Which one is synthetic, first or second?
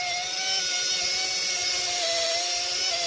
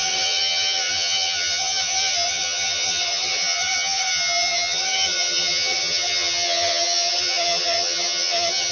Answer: second